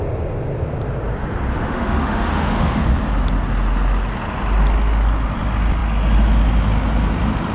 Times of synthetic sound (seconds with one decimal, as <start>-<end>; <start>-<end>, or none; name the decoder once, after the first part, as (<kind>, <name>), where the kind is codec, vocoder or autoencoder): 1.5-2.8 (autoencoder, DAC-VAE)